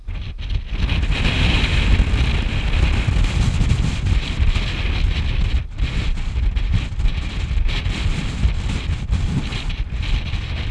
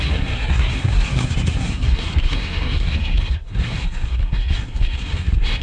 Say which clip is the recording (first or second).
first